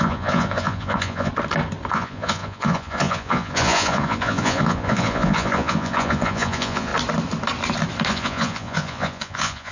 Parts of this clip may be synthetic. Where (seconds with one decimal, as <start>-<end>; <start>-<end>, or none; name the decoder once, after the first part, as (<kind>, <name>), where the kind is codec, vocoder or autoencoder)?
0.0-1.3 (vocoder, Vocos); 1.9-6.9; 8.1-9.7